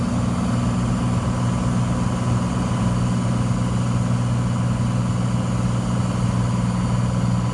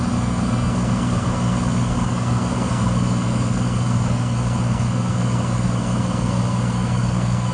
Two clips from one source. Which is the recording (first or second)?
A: first